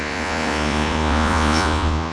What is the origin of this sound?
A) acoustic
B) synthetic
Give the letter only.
B